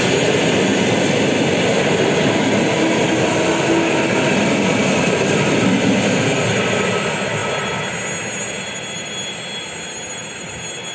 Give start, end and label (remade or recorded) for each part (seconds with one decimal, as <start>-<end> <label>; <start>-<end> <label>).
0.0-10.9 recorded